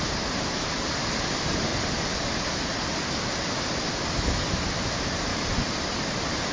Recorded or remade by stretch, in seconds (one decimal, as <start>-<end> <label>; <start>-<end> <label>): 0.0-1.7 remade; 1.7-3.7 recorded; 3.7-6.5 remade